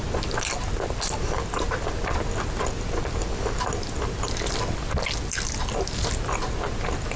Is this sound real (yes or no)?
yes